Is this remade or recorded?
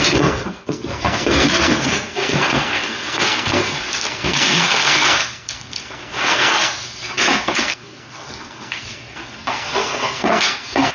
remade